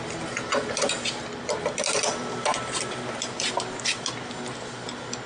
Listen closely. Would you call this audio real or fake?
real